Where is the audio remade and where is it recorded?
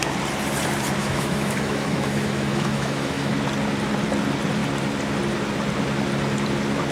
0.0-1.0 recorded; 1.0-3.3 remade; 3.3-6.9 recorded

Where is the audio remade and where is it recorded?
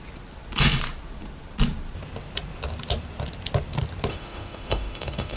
0.0-4.1 recorded; 4.1-5.4 remade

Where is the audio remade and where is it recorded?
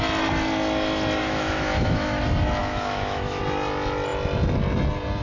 0.0-1.2 recorded; 1.2-2.2 remade; 2.2-2.6 recorded; 2.6-3.4 remade; 3.4-5.2 recorded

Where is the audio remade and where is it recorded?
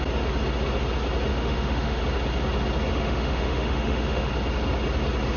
0.0-1.3 recorded; 1.3-2.0 remade; 2.0-2.9 recorded; 2.9-4.3 remade; 4.3-5.4 recorded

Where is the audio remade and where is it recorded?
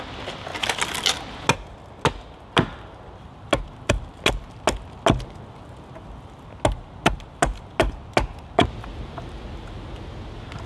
0.0-10.7 recorded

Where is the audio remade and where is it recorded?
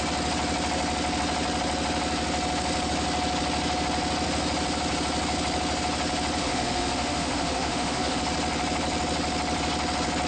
0.0-6.4 recorded; 6.4-8.2 remade; 8.2-10.3 recorded